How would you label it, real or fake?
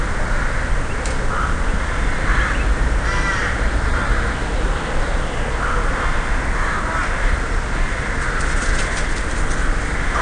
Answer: real